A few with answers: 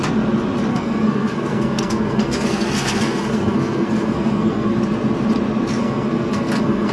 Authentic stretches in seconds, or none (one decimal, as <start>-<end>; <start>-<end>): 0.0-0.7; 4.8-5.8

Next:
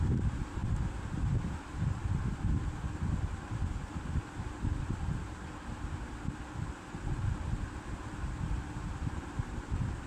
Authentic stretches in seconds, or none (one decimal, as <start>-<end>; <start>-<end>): 0.0-10.1

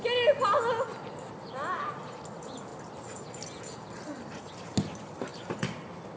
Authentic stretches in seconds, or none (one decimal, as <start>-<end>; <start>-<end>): 0.0-6.2

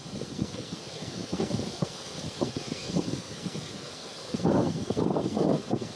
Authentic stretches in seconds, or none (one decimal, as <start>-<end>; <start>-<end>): none

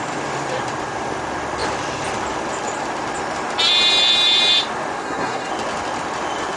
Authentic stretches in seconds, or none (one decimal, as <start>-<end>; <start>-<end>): 0.0-5.0; 5.5-6.6